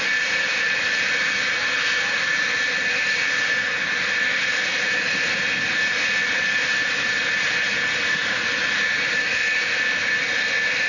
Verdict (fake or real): real